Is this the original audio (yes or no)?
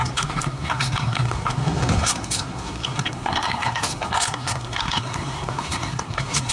no